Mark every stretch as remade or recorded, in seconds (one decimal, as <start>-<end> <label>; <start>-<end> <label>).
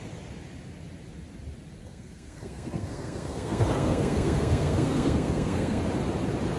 0.0-1.8 recorded; 1.8-5.8 remade; 5.8-6.6 recorded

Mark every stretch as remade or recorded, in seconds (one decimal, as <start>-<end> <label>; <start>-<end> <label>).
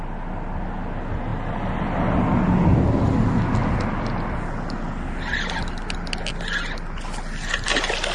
0.0-8.1 recorded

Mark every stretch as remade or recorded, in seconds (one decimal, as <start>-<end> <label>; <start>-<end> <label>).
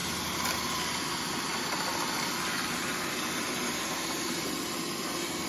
0.0-5.5 recorded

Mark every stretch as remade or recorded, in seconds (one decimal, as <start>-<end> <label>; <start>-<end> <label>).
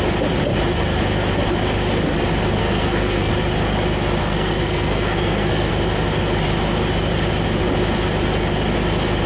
0.0-2.6 recorded; 2.6-3.3 remade; 3.3-4.2 recorded; 4.2-5.7 remade; 5.7-9.3 recorded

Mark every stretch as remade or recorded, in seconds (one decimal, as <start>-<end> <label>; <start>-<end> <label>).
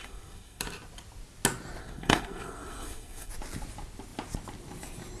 0.0-0.6 remade; 0.6-1.8 recorded; 1.8-3.3 remade; 3.3-5.2 recorded